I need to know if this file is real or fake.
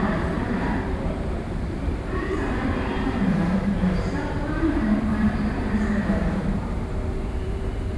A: fake